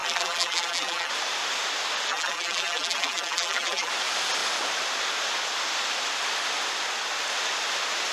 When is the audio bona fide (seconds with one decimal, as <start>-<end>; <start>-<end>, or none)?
1.1-2.1; 3.9-8.1